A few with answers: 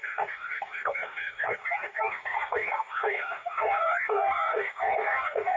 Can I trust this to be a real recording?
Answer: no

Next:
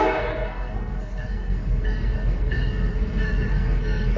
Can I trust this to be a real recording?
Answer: no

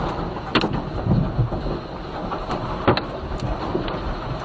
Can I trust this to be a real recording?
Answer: yes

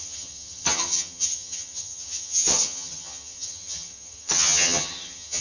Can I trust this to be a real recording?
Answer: no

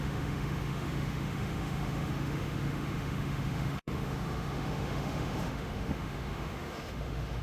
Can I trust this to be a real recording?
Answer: no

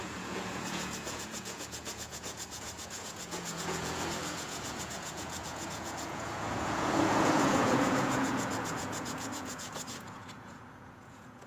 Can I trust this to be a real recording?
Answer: no